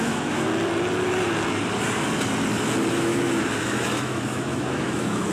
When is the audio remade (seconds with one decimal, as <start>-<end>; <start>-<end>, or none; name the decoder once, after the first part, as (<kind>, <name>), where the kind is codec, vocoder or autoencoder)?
0.0-0.5 (autoencoder, DAC-VAE); 2.9-5.3